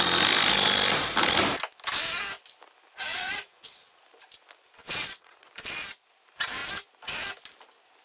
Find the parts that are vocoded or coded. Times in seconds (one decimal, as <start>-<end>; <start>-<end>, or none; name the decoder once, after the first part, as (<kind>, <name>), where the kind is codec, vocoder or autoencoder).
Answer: 3.1-4.0 (vocoder, WaveNeXt); 4.8-5.5